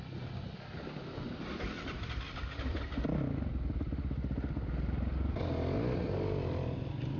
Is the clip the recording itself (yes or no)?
yes